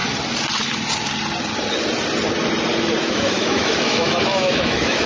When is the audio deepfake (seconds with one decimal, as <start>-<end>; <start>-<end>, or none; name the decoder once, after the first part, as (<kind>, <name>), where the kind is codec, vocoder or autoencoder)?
3.1-5.1 (autoencoder, DAC-VAE)